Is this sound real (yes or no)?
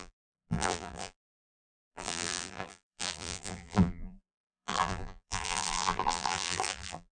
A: no